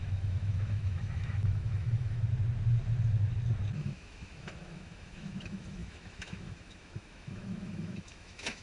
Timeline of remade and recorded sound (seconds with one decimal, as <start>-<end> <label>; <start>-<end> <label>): 0.0-2.2 remade; 2.2-3.8 recorded; 3.8-8.6 remade